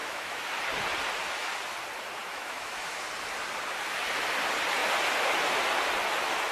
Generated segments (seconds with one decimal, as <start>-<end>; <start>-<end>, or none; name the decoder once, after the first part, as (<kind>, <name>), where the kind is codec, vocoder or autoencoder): 0.0-0.5 (autoencoder, DAC-VAE); 2.2-3.0